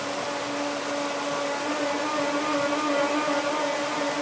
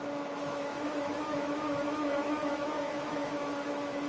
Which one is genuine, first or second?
first